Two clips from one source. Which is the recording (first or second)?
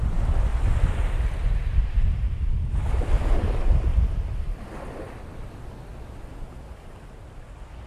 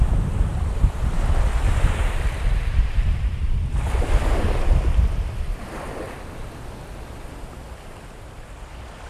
first